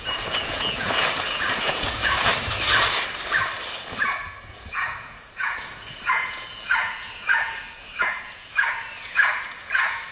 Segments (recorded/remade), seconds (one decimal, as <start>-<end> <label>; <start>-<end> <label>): 0.0-2.3 remade; 2.3-3.9 recorded; 3.9-10.1 remade